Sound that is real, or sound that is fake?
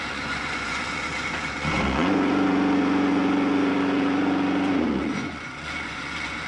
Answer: fake